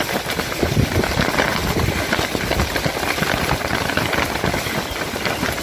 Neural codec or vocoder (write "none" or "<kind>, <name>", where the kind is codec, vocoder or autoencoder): none